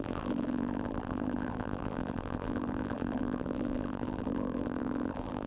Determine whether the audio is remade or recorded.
remade